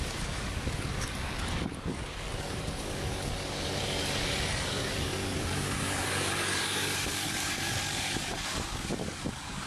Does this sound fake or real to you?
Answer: fake